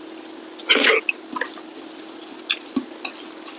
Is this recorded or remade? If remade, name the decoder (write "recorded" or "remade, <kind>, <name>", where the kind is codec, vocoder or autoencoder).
recorded